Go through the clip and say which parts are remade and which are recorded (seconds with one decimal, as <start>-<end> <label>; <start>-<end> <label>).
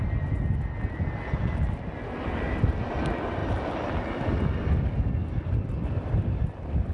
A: 0.0-6.9 recorded